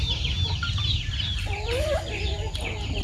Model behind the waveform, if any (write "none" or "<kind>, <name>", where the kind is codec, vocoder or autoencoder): none